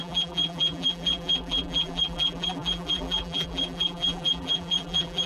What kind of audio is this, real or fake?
fake